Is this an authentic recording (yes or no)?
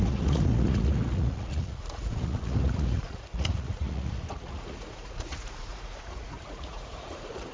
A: no